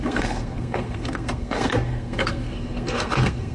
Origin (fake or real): fake